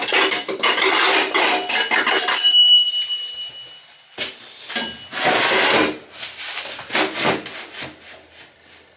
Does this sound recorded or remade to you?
recorded